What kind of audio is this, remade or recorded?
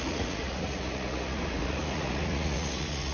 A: remade